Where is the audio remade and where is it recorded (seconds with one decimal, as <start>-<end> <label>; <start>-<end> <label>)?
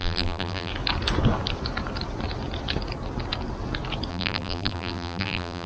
0.0-0.7 remade; 0.7-4.1 recorded; 4.1-5.7 remade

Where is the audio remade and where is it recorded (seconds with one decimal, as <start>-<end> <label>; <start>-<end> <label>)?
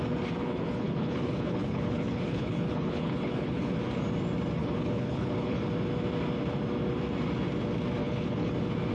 0.0-0.4 recorded; 0.4-3.8 remade; 3.8-4.6 recorded; 4.6-5.6 remade; 5.6-8.0 recorded; 8.0-8.5 remade; 8.5-8.9 recorded